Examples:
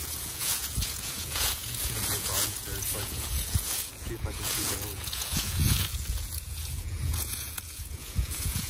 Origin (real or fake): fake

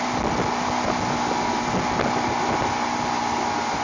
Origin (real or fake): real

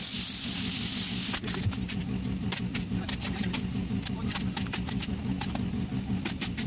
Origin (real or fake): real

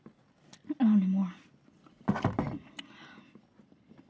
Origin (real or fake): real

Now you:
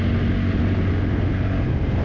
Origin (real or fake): real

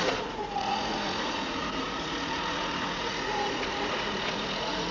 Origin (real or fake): fake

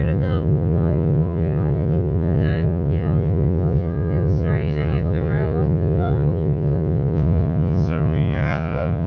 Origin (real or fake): fake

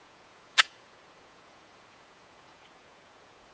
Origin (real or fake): fake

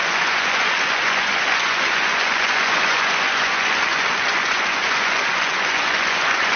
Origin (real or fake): fake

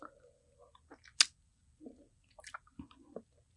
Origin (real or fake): real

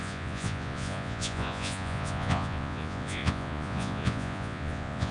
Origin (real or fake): fake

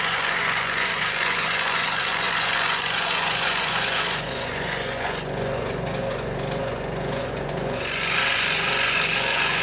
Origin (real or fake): fake